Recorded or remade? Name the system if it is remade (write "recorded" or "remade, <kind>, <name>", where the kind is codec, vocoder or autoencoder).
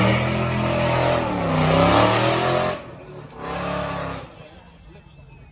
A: recorded